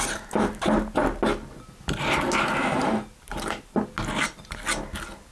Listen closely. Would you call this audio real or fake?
real